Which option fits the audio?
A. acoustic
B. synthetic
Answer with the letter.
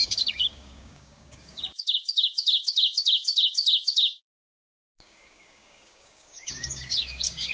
B